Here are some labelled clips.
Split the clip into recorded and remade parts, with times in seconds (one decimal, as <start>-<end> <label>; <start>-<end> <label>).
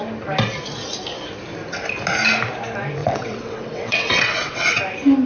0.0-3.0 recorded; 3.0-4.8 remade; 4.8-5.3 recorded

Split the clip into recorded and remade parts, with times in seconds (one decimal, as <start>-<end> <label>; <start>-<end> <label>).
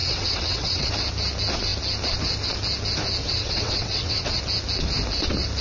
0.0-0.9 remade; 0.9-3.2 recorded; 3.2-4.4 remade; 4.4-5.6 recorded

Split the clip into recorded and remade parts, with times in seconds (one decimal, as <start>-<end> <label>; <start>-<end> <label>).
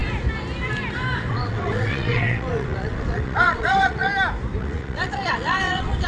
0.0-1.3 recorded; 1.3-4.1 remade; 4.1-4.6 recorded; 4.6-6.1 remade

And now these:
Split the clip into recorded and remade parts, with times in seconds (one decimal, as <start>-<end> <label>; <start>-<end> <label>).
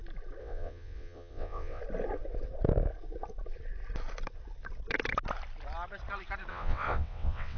0.0-0.4 recorded; 0.4-1.8 remade; 1.8-6.5 recorded; 6.5-7.6 remade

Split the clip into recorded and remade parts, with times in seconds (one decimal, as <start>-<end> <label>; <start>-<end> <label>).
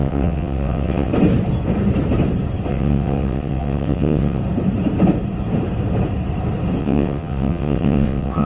0.0-1.1 remade; 1.1-2.7 recorded; 2.7-4.4 remade; 4.4-6.8 recorded; 6.8-8.4 remade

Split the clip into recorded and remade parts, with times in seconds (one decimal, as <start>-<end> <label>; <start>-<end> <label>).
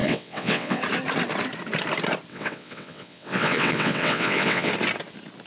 0.0-0.8 remade; 0.8-2.3 recorded; 2.3-4.7 remade; 4.7-5.5 recorded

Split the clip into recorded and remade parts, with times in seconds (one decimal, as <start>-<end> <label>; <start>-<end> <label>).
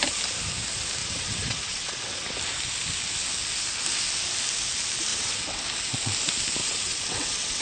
0.0-1.0 recorded; 1.0-2.2 remade; 2.2-5.1 recorded; 5.1-5.6 remade; 5.6-6.6 recorded; 6.6-7.6 remade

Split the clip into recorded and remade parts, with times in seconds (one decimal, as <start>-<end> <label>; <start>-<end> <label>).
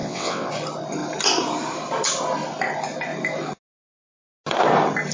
0.0-0.5 remade; 0.5-5.1 recorded